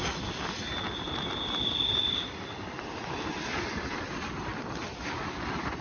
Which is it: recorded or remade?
recorded